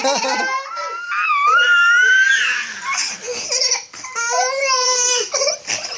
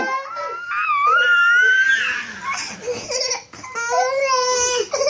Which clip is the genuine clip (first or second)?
second